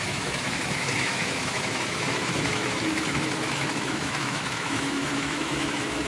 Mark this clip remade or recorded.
remade